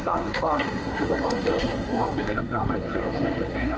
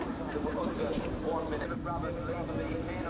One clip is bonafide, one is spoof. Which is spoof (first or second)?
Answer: first